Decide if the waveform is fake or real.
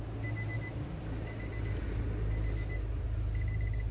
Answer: real